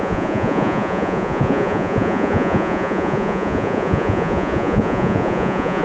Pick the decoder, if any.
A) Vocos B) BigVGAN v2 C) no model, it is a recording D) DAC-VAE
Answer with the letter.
A